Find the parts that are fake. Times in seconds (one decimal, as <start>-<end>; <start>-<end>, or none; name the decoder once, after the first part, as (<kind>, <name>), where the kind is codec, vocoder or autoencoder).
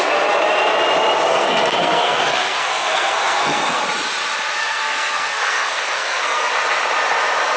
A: 1.3-3.8 (codec, SNAC); 4.6-6.5